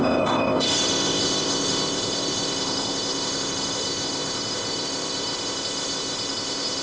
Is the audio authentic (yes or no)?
no